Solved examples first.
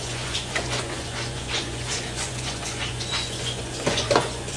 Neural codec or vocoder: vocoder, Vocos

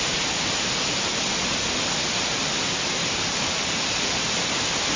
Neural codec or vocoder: none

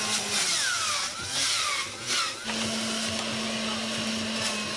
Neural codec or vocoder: none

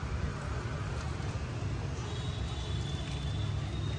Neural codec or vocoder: none